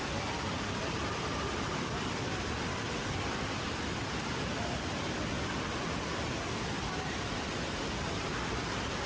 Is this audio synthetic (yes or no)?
yes